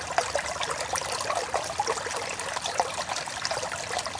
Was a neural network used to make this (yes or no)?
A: no